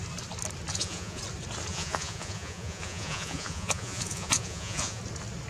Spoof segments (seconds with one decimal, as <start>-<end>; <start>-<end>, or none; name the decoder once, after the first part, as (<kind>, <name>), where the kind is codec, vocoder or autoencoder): 0.7-1.2 (vocoder, Vocos); 1.7-5.0